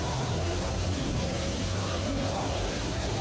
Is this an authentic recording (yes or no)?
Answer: no